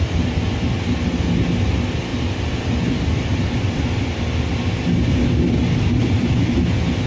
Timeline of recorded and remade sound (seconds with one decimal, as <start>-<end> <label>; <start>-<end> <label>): 0.0-7.1 recorded